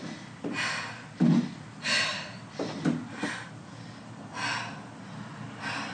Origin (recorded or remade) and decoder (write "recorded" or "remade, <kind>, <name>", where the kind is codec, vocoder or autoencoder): recorded